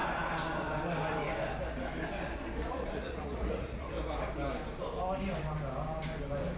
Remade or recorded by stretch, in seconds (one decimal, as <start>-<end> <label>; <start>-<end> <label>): 0.0-2.6 recorded; 2.6-3.9 remade; 3.9-6.6 recorded